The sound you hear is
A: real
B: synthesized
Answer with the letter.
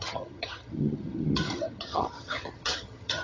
B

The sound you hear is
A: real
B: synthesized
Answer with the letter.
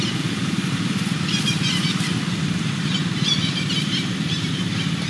B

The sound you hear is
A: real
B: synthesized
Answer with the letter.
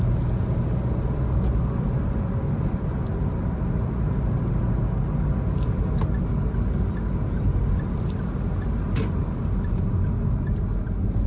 A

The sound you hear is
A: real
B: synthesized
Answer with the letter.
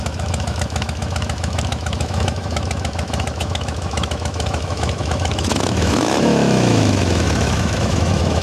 B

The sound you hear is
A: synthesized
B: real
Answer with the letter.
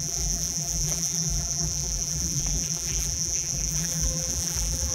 A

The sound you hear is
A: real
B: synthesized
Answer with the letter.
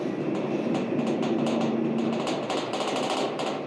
A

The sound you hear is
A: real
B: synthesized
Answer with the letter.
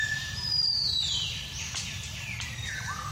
B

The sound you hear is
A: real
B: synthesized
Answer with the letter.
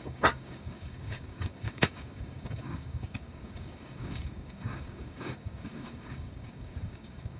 B